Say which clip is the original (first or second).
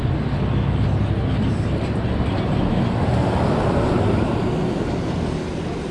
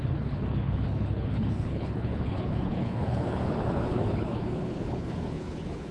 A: first